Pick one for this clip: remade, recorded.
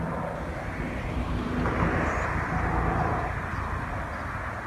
recorded